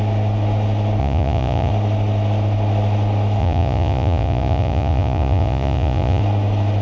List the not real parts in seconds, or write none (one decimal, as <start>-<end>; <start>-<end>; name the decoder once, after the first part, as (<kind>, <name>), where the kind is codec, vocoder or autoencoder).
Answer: 1.0-1.7 (vocoder, Vocos); 3.4-6.2